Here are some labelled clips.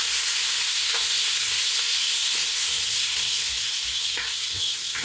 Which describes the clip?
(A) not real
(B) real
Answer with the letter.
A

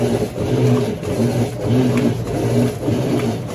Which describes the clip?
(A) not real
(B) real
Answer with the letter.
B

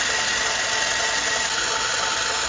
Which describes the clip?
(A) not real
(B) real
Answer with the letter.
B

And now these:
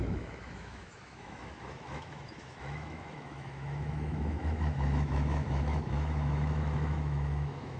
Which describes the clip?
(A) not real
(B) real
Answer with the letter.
A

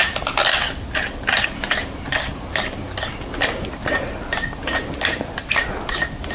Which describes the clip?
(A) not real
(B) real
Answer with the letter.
B